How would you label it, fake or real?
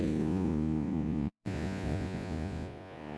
fake